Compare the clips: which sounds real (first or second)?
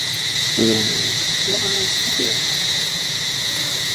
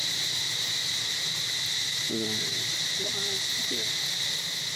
second